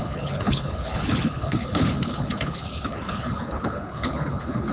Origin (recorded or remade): remade